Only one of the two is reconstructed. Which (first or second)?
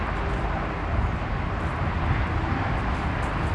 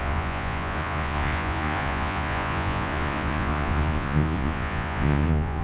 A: second